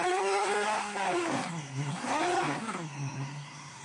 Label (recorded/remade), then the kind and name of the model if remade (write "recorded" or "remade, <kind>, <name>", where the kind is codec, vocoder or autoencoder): remade, codec, SNAC